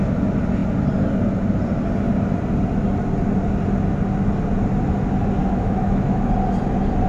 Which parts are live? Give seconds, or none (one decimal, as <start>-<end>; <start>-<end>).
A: 0.0-5.4; 6.3-7.1